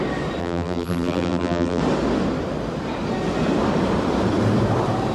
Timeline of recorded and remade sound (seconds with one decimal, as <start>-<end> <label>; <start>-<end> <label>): 0.0-0.4 recorded; 0.4-1.8 remade; 1.8-5.1 recorded

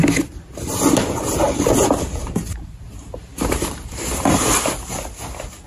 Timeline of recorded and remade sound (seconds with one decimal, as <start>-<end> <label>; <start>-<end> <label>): 0.0-1.4 recorded; 1.4-4.0 remade; 4.0-5.7 recorded

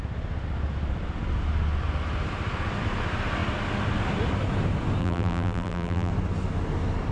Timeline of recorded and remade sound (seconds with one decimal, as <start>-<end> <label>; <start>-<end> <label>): 0.0-5.0 recorded; 5.0-6.1 remade; 6.1-7.1 recorded